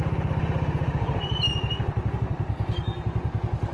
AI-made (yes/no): no